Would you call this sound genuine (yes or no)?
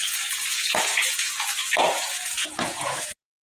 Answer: no